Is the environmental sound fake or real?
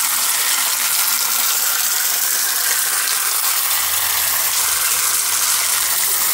real